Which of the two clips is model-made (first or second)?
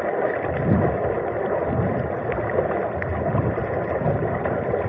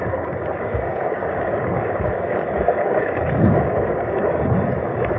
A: second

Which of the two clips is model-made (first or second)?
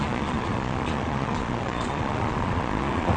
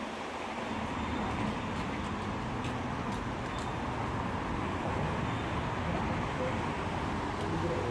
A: first